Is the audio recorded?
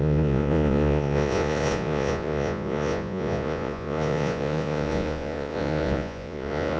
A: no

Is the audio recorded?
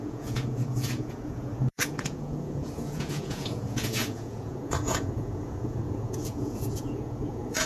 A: no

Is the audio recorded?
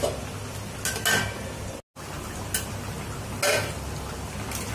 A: yes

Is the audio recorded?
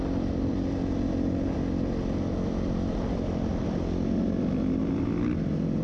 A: yes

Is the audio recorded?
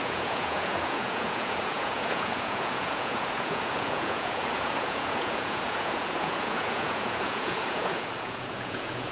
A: no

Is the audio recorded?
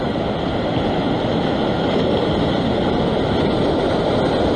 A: yes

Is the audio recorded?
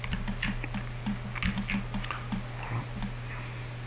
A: yes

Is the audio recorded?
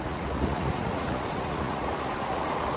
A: no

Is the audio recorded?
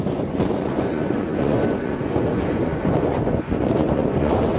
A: no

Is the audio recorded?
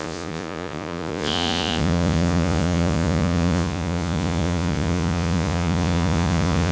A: no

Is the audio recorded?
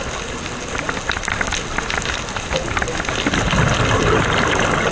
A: yes